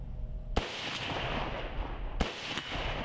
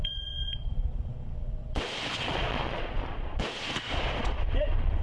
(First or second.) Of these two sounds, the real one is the first